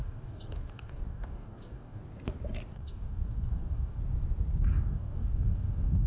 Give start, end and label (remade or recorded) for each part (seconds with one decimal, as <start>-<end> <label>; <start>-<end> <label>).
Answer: 0.0-2.0 remade; 2.0-2.7 recorded; 2.7-4.0 remade; 4.0-4.7 recorded; 4.7-6.1 remade